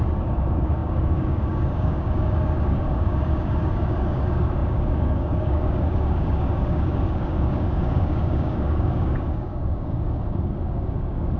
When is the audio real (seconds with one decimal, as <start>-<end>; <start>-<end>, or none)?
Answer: none